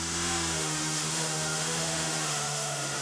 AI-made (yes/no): yes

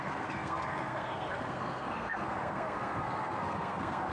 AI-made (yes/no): yes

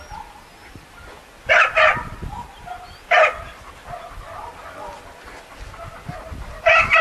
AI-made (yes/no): no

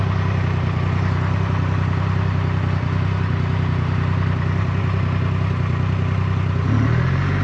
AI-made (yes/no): no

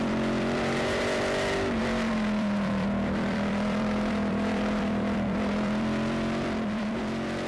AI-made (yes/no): yes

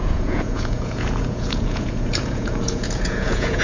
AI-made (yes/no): yes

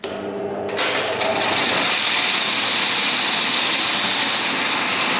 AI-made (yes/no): no